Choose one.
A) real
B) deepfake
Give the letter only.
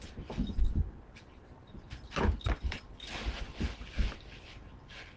A